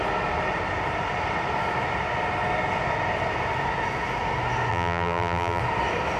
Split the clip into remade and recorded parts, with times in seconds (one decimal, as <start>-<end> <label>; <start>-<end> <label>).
0.0-4.7 recorded; 4.7-5.6 remade; 5.6-6.2 recorded